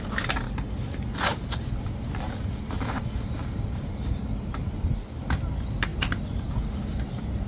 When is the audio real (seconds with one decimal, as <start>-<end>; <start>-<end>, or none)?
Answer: 0.0-1.3; 4.8-7.5